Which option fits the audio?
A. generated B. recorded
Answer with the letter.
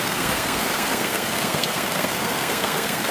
A